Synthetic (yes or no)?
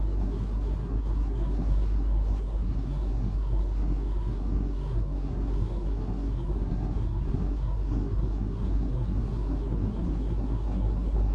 yes